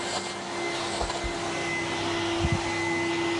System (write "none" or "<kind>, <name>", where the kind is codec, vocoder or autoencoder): none